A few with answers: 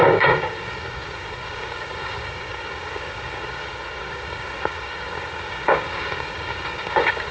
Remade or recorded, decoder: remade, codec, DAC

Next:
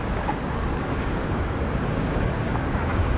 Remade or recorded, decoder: remade, codec, DAC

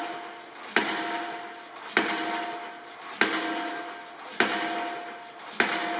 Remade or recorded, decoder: recorded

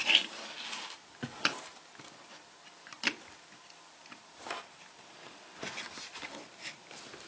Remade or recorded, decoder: recorded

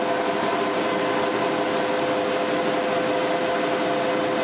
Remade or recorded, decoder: recorded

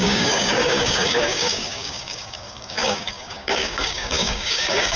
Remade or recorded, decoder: remade, codec, DAC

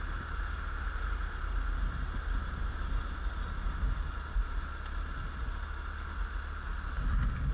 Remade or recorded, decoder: recorded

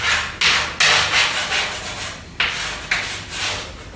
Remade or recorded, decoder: recorded